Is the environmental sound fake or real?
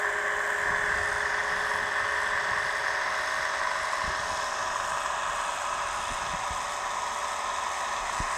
real